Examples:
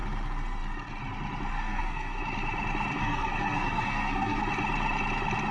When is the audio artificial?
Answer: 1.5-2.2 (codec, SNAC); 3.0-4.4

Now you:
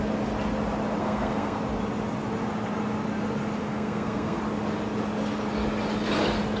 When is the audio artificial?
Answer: 1.0-1.6 (codec, SNAC); 3.6-4.4

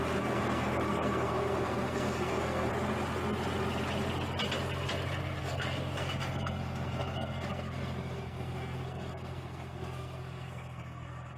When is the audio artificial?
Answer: 0.0-2.7 (codec, SNAC); 5.4-11.4